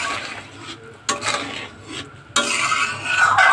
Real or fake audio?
real